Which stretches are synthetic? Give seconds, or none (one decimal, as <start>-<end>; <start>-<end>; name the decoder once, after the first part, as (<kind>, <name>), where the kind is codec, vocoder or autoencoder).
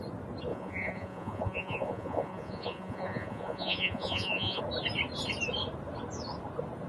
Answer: 0.5-4.6 (vocoder, Vocos)